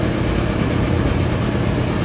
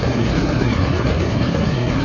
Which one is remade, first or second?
second